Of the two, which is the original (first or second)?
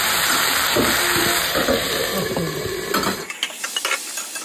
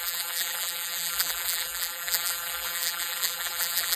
first